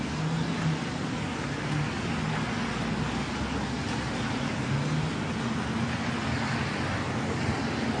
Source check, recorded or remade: recorded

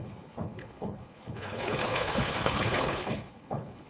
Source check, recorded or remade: remade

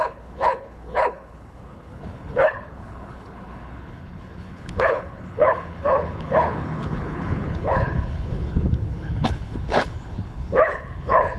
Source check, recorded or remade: remade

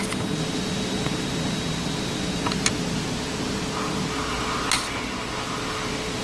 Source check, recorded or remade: recorded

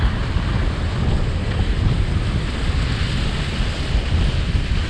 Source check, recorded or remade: recorded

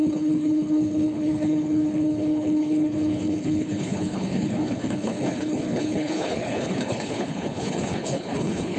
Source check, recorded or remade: remade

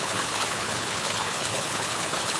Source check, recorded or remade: remade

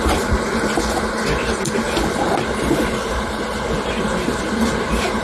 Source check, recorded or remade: recorded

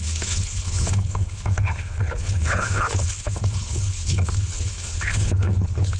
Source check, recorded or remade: remade